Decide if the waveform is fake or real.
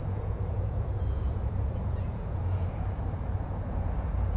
fake